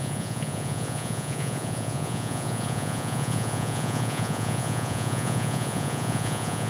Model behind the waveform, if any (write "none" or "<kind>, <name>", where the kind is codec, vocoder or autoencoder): vocoder, Vocos